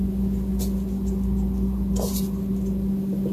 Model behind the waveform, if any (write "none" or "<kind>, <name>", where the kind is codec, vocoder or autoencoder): none